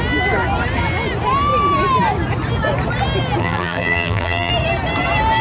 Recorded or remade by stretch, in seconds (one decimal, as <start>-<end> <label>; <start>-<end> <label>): 0.0-3.4 recorded; 3.4-4.5 remade; 4.5-5.4 recorded